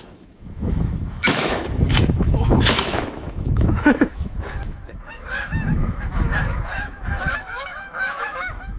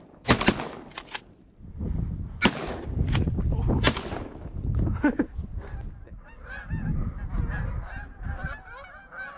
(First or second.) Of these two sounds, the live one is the second